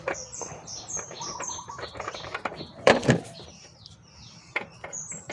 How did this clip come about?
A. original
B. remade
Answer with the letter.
B